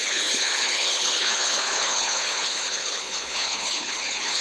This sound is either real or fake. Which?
fake